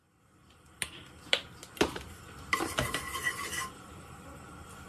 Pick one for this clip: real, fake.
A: real